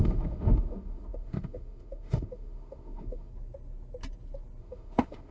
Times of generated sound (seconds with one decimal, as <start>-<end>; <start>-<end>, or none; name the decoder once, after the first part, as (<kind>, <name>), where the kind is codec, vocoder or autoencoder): 0.0-3.3 (autoencoder, DAC-VAE); 4.6-5.3